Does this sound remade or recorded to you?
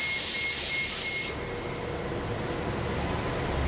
recorded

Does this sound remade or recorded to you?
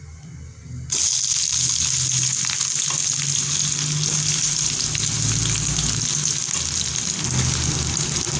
recorded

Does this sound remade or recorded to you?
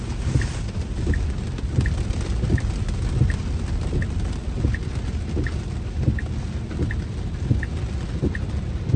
recorded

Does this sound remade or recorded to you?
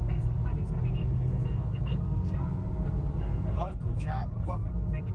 remade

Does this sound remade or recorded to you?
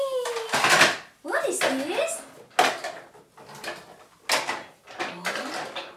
recorded